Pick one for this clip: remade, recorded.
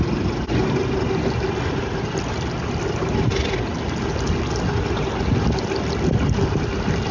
recorded